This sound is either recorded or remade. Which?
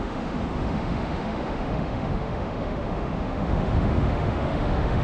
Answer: remade